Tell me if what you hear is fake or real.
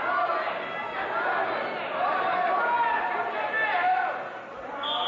real